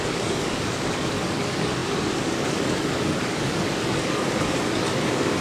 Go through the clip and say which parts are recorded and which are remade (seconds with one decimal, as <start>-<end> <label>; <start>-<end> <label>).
0.0-5.4 remade